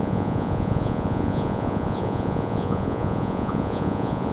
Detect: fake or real fake